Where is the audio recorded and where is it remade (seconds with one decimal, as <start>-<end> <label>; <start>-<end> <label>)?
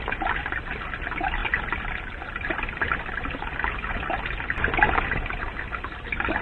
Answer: 0.0-6.4 recorded